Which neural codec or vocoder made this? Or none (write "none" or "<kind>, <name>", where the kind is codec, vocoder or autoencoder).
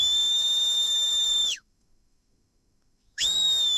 autoencoder, DAC-VAE